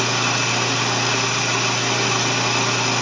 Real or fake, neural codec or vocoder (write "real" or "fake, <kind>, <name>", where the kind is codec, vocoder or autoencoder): real